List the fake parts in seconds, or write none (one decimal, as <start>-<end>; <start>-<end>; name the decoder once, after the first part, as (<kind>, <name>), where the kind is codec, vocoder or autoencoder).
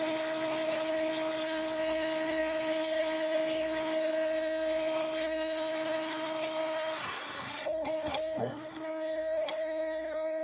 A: 0.0-10.4 (codec, SNAC)